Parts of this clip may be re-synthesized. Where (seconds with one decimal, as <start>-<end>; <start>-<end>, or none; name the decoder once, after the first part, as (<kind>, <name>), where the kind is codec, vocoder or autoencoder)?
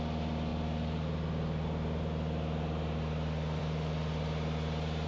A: none